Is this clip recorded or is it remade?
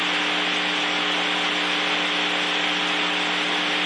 recorded